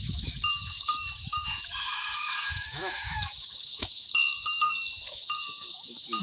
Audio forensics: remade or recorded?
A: remade